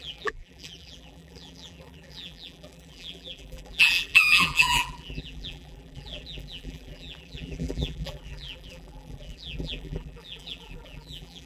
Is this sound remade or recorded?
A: remade